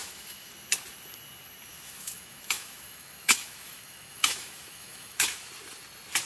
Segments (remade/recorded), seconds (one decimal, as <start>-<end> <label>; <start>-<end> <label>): 0.0-0.5 remade; 0.5-1.7 recorded; 1.7-5.5 remade; 5.5-6.3 recorded

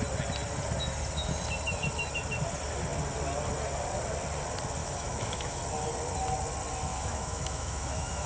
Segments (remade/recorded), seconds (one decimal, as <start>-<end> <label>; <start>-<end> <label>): 0.0-4.8 recorded; 4.8-5.6 remade; 5.6-6.9 recorded; 6.9-8.3 remade